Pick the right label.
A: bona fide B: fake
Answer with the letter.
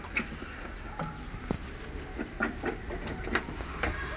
A